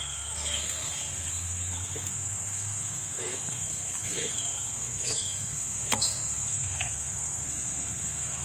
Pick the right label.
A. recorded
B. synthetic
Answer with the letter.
B